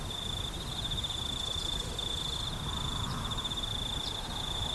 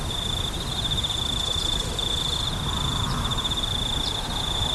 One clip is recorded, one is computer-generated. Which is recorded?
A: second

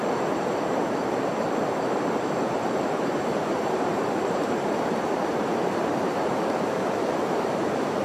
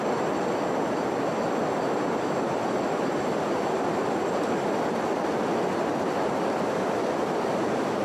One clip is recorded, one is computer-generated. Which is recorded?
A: second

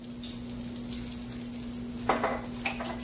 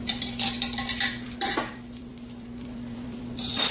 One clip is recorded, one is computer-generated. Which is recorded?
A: first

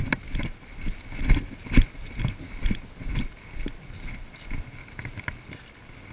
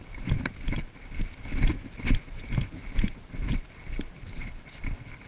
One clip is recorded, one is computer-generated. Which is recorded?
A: first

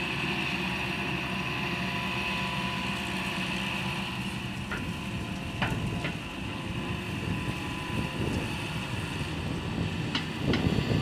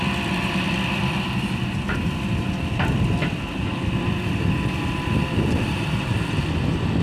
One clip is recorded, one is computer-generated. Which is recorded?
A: first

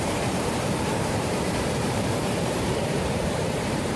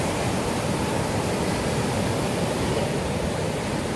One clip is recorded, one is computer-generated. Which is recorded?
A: second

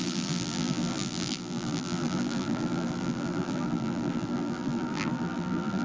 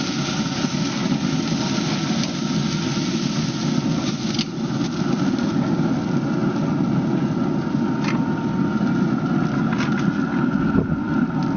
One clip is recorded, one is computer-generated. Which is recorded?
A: second